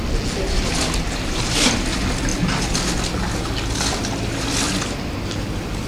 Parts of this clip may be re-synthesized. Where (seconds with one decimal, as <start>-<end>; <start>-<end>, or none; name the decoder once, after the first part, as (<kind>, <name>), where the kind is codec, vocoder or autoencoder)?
none